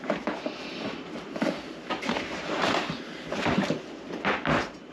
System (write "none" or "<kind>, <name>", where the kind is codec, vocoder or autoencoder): none